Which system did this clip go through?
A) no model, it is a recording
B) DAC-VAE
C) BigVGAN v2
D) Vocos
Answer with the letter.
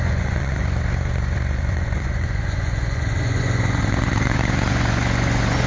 D